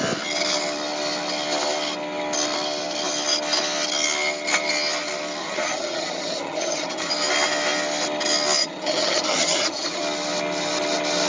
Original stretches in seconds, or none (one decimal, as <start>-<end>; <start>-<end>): 0.0-5.4; 7.1-8.6; 10.0-11.3